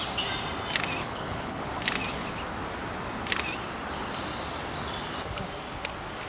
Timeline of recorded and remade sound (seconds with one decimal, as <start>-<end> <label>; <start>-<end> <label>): 0.0-1.0 recorded; 1.0-1.6 remade; 1.6-6.3 recorded

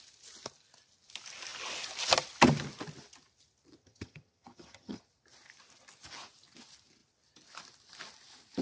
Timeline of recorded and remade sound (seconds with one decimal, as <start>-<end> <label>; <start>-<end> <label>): 0.0-3.8 recorded; 3.8-5.0 remade; 5.0-8.6 recorded

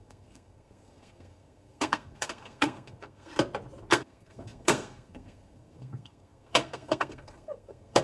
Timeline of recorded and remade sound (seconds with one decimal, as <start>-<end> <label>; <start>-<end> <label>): 0.0-3.3 remade; 3.3-3.9 recorded; 3.9-8.0 remade

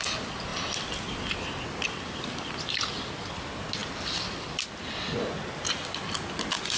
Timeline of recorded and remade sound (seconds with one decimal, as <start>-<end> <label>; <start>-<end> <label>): 0.0-6.8 recorded

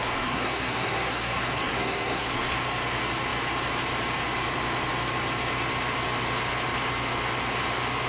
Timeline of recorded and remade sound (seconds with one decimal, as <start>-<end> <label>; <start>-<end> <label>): 0.0-2.6 remade; 2.6-8.1 recorded

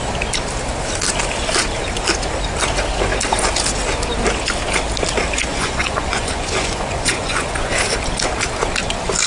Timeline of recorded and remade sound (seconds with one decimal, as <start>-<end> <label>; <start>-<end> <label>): 0.0-5.5 recorded; 5.5-7.7 remade; 7.7-9.3 recorded